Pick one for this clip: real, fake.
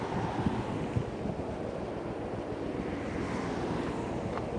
real